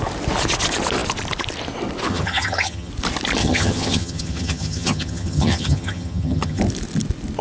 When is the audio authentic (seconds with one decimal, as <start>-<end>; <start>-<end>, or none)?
0.0-2.1; 2.9-3.4; 6.6-7.4